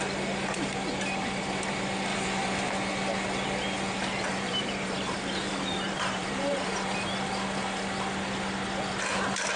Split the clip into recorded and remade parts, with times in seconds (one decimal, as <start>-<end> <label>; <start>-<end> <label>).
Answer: 0.0-2.1 recorded; 2.1-2.7 remade; 2.7-4.3 recorded; 4.3-6.9 remade; 6.9-9.6 recorded